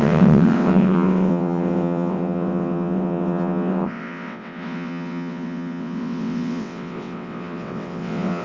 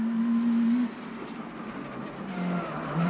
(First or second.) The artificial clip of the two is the first